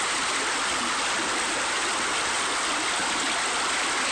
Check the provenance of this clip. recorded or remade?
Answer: recorded